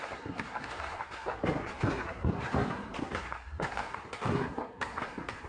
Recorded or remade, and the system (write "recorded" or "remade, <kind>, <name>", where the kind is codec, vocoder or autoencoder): remade, codec, SNAC